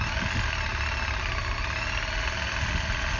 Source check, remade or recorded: recorded